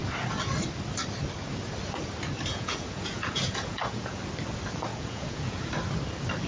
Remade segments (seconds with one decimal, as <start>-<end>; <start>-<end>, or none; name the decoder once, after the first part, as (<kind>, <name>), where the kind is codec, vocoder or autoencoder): 2.5-4.2 (vocoder, Vocos); 4.9-5.7